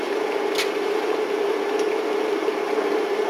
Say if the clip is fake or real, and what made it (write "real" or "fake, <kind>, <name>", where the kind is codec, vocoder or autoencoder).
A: real